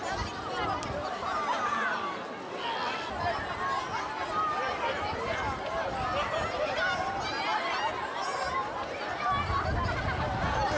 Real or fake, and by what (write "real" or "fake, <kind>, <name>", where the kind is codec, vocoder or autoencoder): real